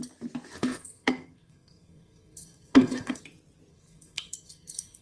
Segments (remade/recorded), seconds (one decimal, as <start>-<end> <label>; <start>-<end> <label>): 0.0-0.6 recorded; 0.6-3.2 remade; 3.2-3.7 recorded; 3.7-5.0 remade